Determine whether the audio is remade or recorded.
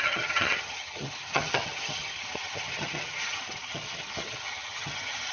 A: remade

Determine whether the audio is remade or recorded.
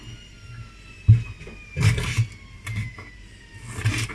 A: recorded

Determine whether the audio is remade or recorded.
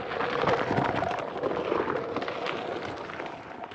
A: recorded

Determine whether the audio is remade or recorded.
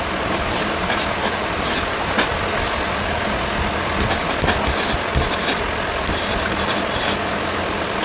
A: recorded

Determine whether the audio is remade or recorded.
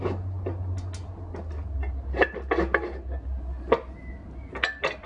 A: recorded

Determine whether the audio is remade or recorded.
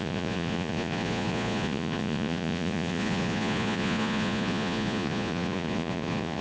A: remade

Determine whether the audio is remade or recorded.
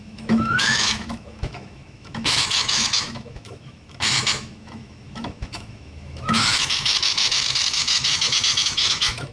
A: remade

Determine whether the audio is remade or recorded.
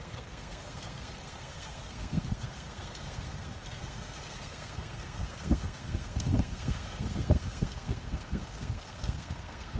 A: remade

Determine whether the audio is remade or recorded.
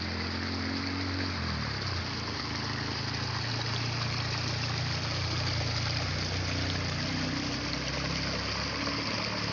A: recorded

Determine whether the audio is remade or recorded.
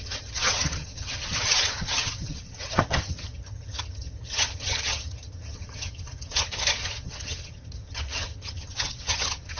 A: remade